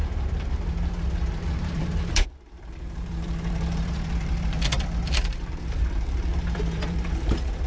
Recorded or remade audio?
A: remade